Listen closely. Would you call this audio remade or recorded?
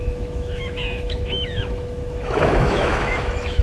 remade